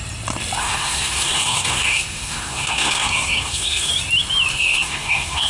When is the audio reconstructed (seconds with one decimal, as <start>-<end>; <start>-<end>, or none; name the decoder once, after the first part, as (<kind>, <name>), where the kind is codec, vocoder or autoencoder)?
0.6-3.9 (codec, SNAC); 4.5-5.5